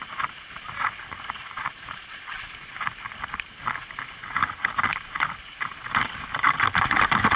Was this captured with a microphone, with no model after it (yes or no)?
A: yes